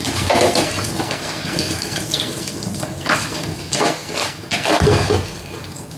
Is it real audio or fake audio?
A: fake